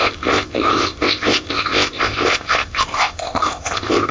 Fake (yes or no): yes